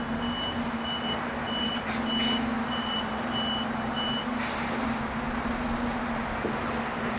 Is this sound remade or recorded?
recorded